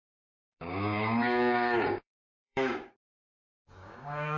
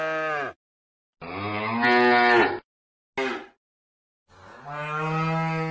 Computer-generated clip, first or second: first